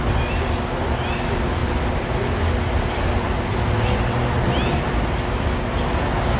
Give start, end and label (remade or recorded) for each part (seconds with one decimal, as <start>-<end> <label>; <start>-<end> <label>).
0.0-6.4 recorded